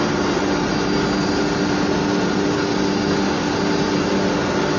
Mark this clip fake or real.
real